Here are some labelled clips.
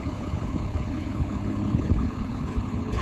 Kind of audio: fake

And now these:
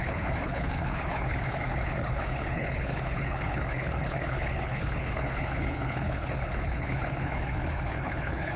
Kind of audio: fake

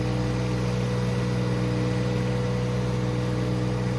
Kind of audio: real